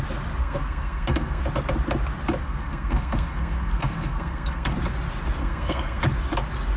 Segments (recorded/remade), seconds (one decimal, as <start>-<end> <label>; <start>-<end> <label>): 0.0-0.4 recorded; 0.4-1.4 remade; 1.4-2.4 recorded; 2.4-4.7 remade; 4.7-5.4 recorded; 5.4-6.0 remade; 6.0-6.8 recorded